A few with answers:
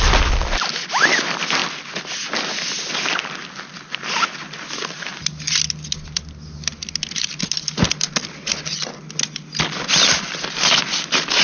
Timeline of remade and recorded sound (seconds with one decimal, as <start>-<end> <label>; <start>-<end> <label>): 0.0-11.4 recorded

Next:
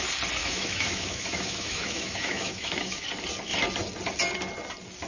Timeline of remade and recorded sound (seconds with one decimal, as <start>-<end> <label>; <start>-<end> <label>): 0.0-0.4 recorded; 0.4-3.0 remade; 3.0-5.1 recorded

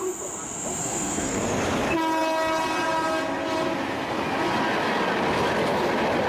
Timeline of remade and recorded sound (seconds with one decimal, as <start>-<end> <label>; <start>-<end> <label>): 0.0-0.8 recorded; 0.8-1.5 remade; 1.5-6.3 recorded

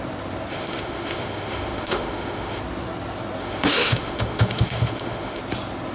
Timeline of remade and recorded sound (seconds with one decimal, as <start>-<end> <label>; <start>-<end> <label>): 0.0-0.5 recorded; 0.5-2.6 remade; 2.6-3.4 recorded; 3.4-5.4 remade; 5.4-5.9 recorded